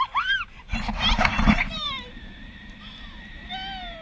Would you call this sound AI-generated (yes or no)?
yes